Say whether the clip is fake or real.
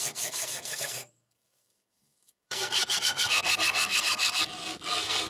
fake